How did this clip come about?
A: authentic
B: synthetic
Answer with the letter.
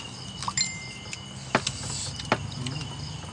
A